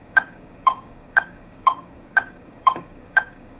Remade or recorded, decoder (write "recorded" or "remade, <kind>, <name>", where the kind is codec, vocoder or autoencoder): remade, codec, DAC